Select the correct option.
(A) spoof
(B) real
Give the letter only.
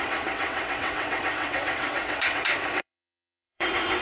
A